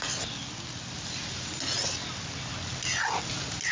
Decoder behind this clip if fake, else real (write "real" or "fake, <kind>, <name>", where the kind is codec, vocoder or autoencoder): real